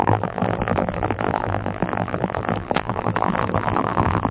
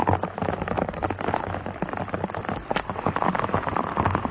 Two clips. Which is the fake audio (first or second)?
first